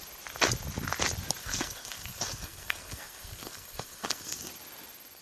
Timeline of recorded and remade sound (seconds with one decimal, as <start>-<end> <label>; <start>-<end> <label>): 0.0-1.4 recorded; 1.4-4.5 remade; 4.5-5.2 recorded